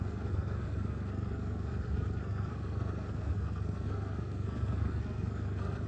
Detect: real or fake fake